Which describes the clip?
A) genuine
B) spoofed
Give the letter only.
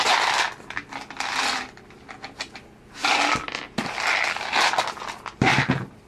A